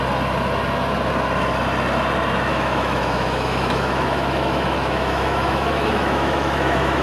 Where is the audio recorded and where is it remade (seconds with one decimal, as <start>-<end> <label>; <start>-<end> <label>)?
0.0-2.5 recorded; 2.5-7.0 remade